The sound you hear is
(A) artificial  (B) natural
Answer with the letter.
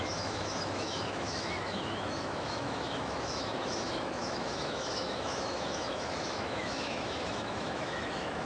A